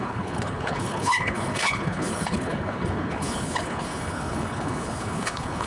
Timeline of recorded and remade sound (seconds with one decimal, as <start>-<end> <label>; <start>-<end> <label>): 0.0-5.7 remade

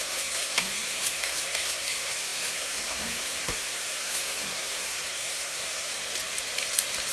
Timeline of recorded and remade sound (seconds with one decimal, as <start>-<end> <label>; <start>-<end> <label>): 0.0-6.0 remade; 6.0-7.1 recorded

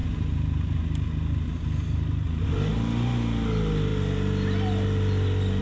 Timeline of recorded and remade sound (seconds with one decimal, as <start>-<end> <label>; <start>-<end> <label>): 0.0-0.8 remade; 0.8-5.6 recorded

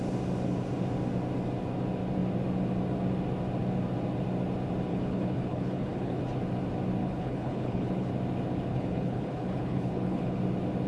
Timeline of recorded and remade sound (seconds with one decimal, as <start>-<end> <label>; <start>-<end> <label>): 0.0-4.9 recorded; 4.9-6.2 remade; 6.2-7.0 recorded; 7.0-8.1 remade; 8.1-8.7 recorded; 8.7-10.4 remade; 10.4-10.9 recorded